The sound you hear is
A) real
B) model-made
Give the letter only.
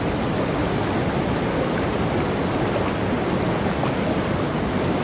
A